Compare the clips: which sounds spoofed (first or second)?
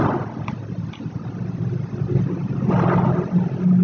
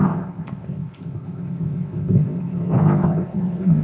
second